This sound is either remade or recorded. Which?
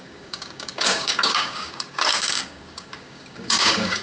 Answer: remade